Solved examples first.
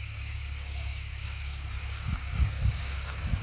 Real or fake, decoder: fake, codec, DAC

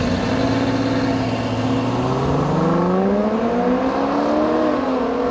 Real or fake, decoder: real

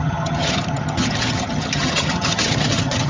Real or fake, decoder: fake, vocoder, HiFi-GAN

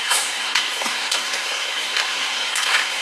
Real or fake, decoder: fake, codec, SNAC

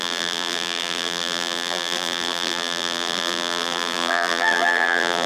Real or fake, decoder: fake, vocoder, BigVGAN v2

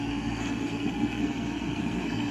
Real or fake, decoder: fake, codec, SNAC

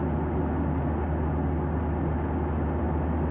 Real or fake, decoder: real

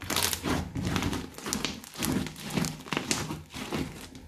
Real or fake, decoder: real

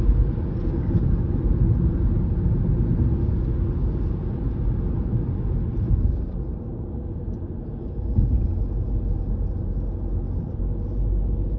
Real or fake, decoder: real